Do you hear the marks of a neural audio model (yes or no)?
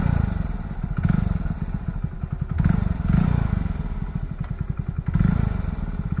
no